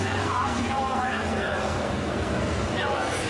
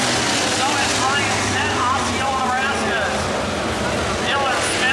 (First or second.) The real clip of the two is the second